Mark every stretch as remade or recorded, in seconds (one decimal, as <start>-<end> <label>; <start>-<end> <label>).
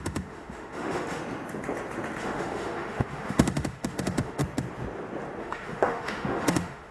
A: 0.0-1.2 remade; 1.2-2.2 recorded; 2.2-4.4 remade; 4.4-5.4 recorded; 5.4-6.9 remade